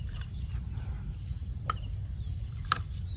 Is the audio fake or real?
real